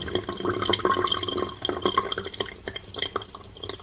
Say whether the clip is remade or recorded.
recorded